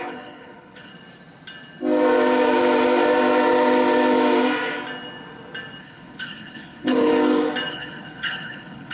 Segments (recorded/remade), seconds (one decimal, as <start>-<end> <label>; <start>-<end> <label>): 0.0-0.9 remade; 0.9-5.8 recorded; 5.8-7.1 remade; 7.1-7.7 recorded; 7.7-8.9 remade